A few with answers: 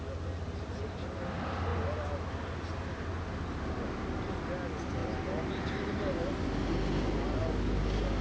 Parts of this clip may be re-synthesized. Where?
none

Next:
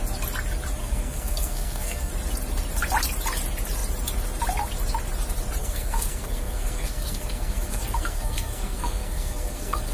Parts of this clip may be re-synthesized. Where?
0.8-2.1 (codec, SNAC); 5.6-9.9

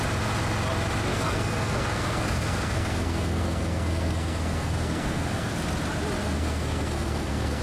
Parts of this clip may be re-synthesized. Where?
1.1-5.5 (codec, SNAC); 6.2-7.6

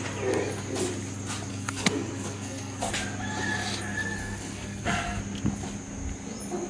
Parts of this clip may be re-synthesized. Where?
1.5-2.9 (codec, SNAC); 4.2-5.2

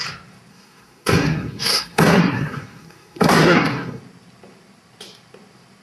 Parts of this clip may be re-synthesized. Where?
0.5-4.0 (codec, SNAC)

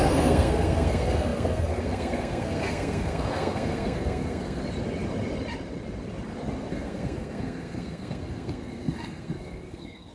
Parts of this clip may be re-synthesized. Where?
0.0-4.6 (codec, SNAC); 6.7-10.1